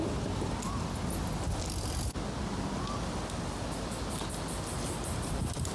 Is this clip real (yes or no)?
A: yes